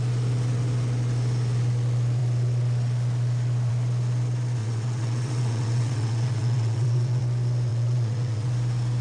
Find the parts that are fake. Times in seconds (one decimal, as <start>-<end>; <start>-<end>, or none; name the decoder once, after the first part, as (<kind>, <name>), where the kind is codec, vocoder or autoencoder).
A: 4.6-7.2 (vocoder, WaveNeXt); 7.7-8.5